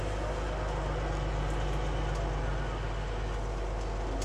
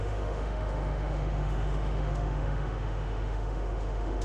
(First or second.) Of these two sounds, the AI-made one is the second